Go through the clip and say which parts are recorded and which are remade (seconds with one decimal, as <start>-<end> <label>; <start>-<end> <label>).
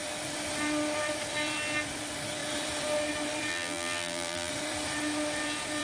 0.0-3.5 recorded; 3.5-4.5 remade; 4.5-5.8 recorded